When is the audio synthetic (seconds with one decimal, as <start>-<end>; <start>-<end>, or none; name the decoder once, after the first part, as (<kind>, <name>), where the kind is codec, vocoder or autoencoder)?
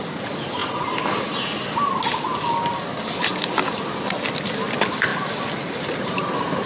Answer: none